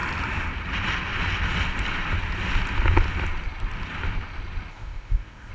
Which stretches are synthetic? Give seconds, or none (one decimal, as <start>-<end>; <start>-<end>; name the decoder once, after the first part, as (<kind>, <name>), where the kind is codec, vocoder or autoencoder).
4.7-5.5 (codec, ZipCodec)